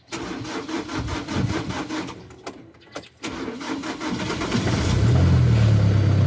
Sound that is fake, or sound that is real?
real